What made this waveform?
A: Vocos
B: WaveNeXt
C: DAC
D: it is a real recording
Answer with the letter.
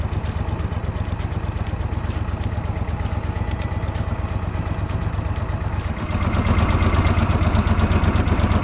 D